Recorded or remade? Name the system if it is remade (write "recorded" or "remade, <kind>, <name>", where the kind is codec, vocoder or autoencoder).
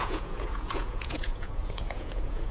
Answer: remade, vocoder, Vocos